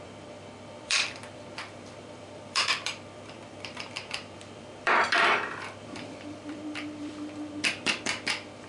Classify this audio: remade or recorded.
remade